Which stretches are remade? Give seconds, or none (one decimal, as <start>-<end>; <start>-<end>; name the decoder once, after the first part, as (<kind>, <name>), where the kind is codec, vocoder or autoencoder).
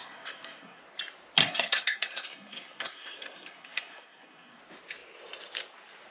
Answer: 0.0-0.8 (codec, SNAC); 1.4-4.6